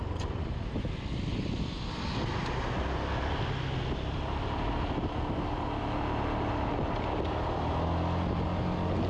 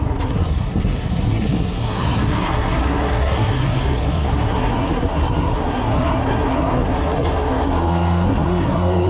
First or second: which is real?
first